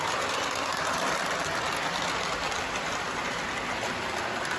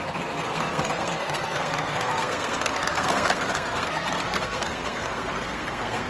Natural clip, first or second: first